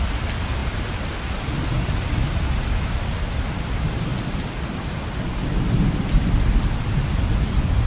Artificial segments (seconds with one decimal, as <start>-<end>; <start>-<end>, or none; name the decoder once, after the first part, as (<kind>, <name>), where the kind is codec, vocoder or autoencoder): none